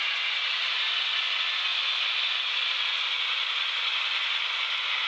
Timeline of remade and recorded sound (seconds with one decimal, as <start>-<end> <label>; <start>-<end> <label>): 0.0-5.1 recorded